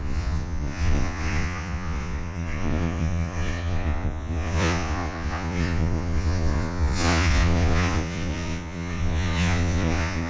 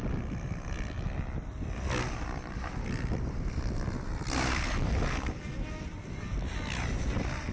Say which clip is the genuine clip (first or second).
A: second